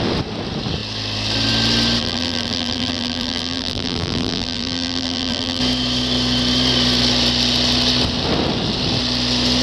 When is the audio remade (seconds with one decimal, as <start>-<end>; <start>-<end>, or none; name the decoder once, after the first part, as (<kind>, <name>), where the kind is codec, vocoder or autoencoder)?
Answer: 2.0-5.6 (vocoder, BigVGAN v2)

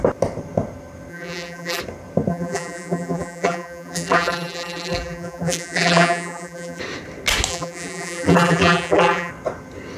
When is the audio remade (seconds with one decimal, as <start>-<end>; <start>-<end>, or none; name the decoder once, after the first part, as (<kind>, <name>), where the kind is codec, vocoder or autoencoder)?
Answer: 1.1-1.8 (vocoder, BigVGAN v2); 2.3-6.8; 7.5-9.3

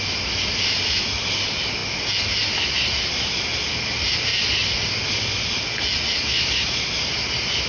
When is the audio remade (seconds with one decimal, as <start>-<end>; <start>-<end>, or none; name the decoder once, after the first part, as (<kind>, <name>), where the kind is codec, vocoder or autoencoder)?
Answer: 0.0-1.8 (vocoder, BigVGAN v2); 3.1-4.3; 7.1-7.7

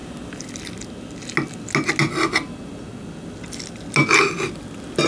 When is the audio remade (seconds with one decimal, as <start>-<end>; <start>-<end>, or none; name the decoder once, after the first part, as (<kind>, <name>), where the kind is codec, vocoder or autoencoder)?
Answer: none